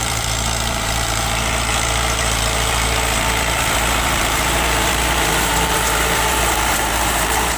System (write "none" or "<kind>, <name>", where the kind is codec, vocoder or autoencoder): vocoder, BigVGAN v2